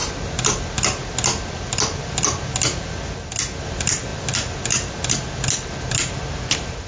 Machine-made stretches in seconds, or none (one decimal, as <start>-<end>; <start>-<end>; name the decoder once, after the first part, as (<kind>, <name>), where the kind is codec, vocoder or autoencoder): none